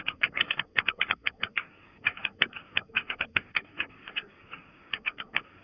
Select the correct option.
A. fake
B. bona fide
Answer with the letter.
A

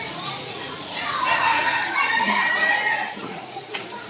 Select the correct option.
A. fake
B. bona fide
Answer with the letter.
A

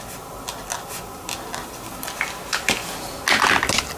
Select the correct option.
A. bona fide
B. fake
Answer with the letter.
A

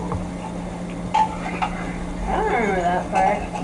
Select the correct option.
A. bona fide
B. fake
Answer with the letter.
A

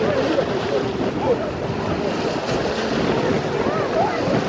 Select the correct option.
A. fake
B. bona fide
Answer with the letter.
B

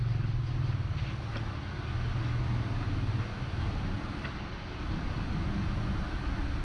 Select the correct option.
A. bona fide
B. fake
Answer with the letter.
A